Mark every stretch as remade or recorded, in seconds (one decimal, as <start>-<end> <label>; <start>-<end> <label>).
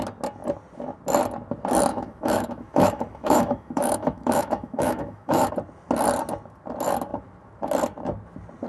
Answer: 0.0-1.9 recorded; 1.9-5.5 remade; 5.5-8.7 recorded